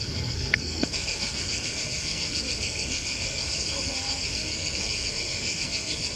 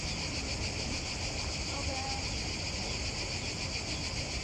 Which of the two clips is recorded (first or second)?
second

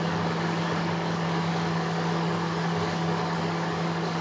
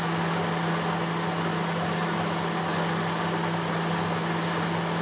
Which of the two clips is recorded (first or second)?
second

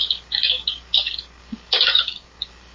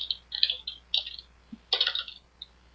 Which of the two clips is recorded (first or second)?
second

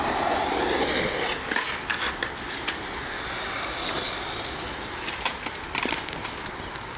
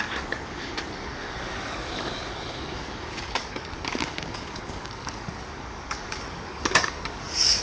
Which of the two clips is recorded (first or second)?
first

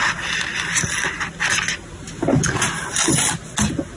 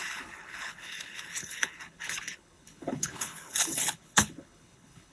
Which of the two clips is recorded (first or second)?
first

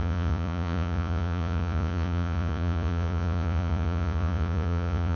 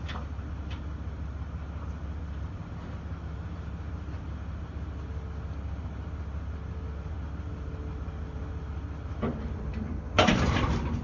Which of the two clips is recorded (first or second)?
second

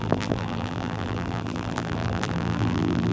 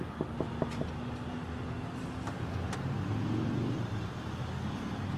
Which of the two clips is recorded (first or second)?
second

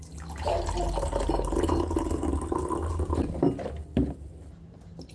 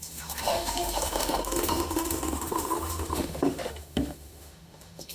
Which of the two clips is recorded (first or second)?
first